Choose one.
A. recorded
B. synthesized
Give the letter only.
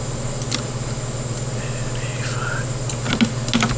A